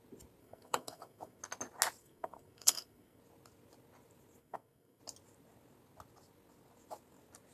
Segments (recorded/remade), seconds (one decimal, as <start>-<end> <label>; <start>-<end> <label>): 0.0-0.4 recorded; 0.4-1.4 remade; 1.4-2.0 recorded; 2.0-3.2 remade; 3.2-4.4 recorded; 4.4-5.0 remade; 5.0-7.5 recorded